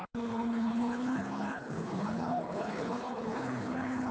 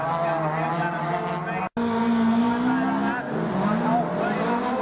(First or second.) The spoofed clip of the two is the first